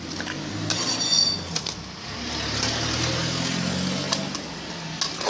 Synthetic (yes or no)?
no